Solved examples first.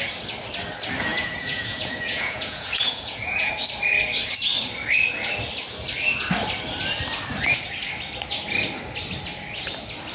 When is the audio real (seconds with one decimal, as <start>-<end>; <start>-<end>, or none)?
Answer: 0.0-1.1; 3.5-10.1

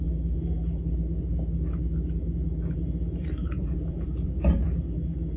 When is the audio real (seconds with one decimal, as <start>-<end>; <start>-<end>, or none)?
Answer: 0.0-3.4; 4.4-5.4

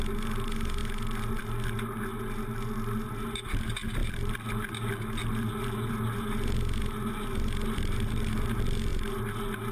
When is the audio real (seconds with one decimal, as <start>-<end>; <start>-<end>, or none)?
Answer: 0.0-9.7